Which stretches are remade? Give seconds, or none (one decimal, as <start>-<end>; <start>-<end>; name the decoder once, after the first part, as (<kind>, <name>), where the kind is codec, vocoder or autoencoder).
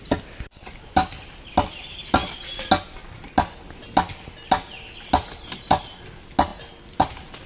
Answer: none